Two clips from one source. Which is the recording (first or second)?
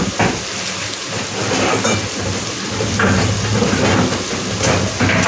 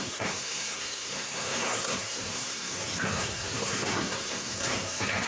first